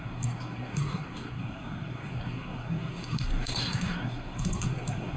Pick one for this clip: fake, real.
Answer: fake